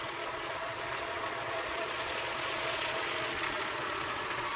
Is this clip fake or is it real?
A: fake